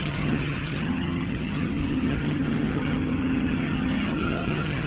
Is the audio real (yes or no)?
no